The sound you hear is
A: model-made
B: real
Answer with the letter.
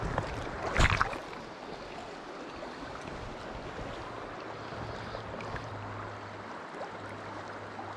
B